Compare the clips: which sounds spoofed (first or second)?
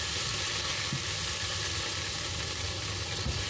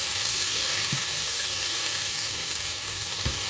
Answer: second